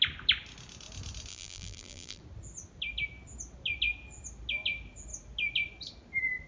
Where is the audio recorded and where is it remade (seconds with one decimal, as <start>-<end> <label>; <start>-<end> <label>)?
0.0-1.3 recorded; 1.3-2.2 remade; 2.2-6.5 recorded